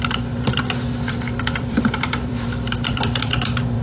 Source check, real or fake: fake